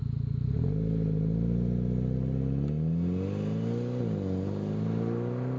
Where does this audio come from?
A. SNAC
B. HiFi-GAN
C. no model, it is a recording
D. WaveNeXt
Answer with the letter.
C